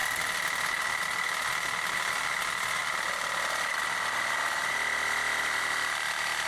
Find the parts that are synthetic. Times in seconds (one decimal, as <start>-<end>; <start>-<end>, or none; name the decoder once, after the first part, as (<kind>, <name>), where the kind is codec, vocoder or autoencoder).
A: 2.4-6.5 (vocoder, BigVGAN v2)